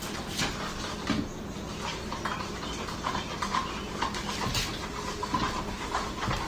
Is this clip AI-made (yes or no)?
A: no